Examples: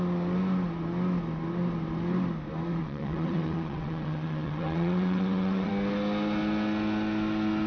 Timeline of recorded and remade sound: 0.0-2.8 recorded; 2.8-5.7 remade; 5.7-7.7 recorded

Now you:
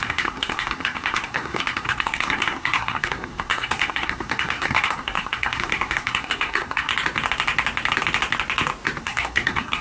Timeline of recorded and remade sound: 0.0-6.9 remade; 6.9-9.0 recorded; 9.0-9.8 remade

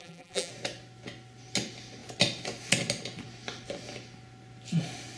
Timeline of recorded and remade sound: 0.0-0.5 remade; 0.5-5.2 recorded

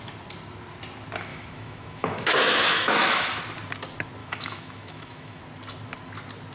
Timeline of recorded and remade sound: 0.0-1.3 recorded; 1.3-3.4 remade; 3.4-4.2 recorded; 4.2-5.4 remade; 5.4-6.5 recorded

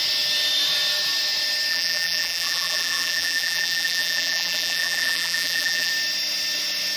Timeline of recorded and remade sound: 0.0-1.7 recorded; 1.7-5.9 remade; 5.9-7.0 recorded